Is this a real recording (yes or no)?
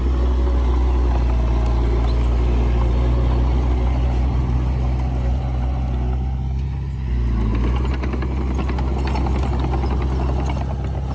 yes